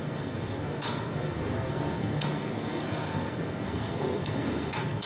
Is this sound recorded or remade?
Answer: remade